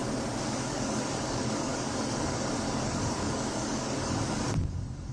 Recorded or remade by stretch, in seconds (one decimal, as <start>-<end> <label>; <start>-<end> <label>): 0.0-0.5 recorded; 0.5-5.1 remade